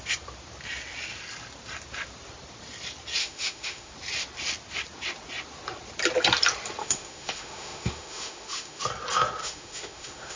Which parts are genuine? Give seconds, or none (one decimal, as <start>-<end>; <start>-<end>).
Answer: 0.0-3.2; 3.9-6.8; 8.8-9.4